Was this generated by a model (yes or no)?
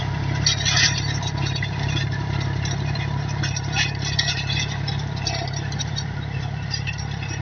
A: yes